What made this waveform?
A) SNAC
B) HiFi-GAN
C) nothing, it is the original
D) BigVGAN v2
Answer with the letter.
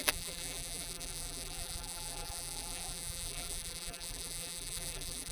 D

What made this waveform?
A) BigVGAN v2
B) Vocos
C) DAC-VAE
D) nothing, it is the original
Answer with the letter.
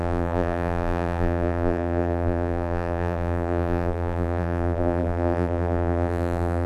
A